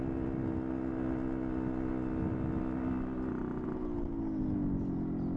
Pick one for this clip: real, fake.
real